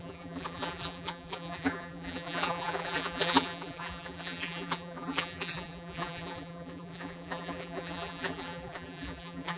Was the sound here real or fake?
fake